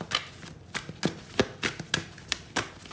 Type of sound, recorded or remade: recorded